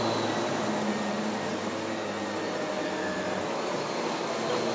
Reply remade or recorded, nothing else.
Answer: recorded